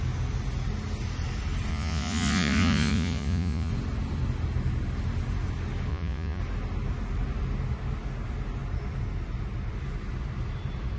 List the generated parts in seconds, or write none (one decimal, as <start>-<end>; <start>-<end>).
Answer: 1.7-3.7; 5.9-6.4